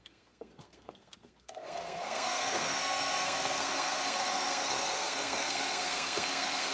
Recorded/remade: remade